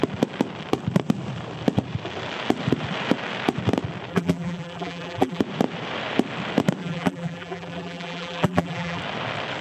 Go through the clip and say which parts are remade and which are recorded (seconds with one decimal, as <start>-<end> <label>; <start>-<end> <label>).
0.0-4.1 recorded; 4.1-5.4 remade; 5.4-6.8 recorded; 6.8-9.0 remade; 9.0-9.6 recorded